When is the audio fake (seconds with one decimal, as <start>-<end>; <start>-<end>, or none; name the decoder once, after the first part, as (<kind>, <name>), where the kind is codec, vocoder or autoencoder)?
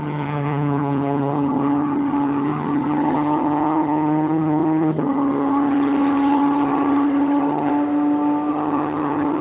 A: 0.0-7.7 (vocoder, HiFi-GAN); 8.5-9.4